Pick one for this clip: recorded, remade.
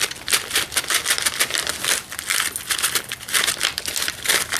recorded